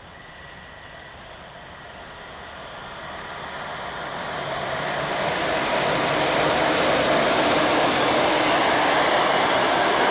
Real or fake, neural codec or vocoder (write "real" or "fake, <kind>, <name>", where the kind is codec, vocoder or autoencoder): real